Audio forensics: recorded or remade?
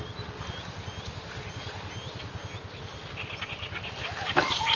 recorded